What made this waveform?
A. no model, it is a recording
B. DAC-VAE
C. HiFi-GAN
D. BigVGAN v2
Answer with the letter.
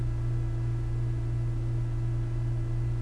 A